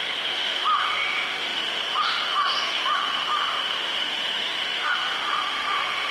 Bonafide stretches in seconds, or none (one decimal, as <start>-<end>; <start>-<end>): none